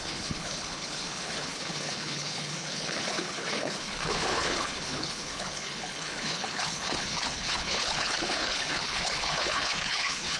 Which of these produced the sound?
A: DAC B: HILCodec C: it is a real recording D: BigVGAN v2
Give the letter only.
B